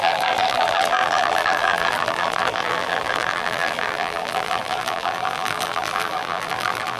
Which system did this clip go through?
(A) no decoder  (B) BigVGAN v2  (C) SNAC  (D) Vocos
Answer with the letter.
B